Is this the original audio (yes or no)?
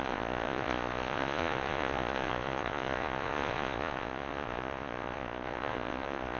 no